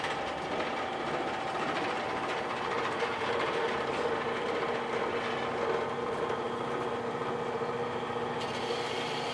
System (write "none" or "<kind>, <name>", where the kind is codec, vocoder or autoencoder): none